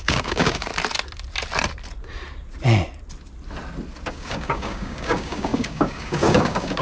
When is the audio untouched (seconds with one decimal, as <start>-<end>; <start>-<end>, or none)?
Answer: 0.7-4.1